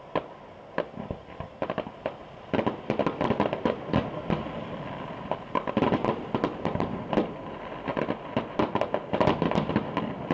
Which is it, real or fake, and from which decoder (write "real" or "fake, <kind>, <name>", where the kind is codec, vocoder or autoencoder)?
real